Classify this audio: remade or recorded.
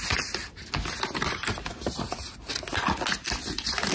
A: recorded